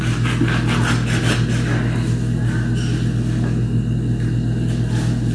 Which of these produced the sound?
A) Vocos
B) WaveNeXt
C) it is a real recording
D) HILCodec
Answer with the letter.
C